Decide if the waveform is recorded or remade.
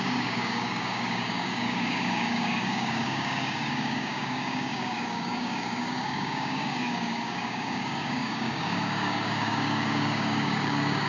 remade